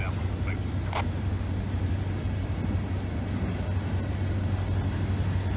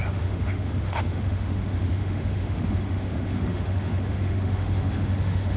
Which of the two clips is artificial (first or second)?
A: second